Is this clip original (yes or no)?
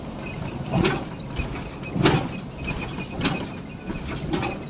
yes